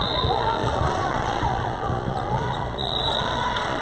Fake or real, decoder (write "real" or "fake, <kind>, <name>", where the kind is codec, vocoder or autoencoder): fake, vocoder, Vocos